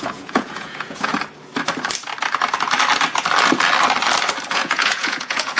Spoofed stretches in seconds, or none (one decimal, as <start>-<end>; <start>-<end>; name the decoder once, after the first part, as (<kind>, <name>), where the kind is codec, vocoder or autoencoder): 0.0-1.1 (vocoder, Vocos); 4.5-5.6